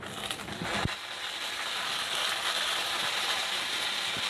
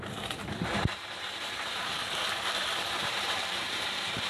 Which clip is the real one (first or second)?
first